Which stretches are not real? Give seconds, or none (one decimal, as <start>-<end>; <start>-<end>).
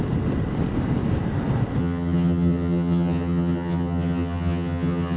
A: 1.8-5.2